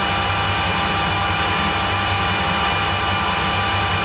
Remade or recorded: recorded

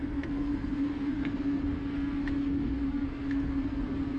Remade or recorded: remade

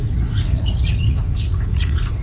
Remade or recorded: remade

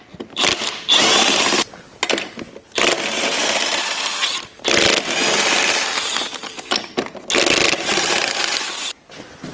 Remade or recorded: recorded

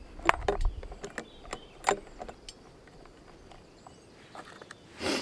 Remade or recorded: recorded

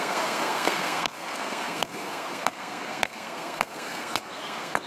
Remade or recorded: remade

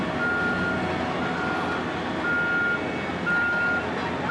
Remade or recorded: recorded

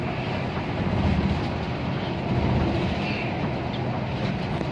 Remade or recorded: recorded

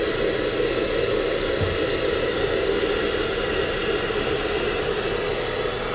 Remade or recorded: recorded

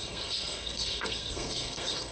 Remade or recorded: remade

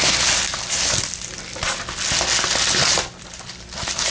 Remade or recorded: recorded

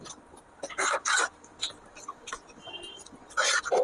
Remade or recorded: recorded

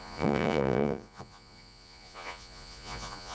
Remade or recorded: remade